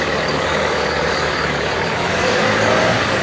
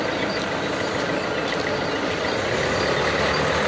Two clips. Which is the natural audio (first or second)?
second